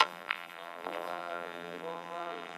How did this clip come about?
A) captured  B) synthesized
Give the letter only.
B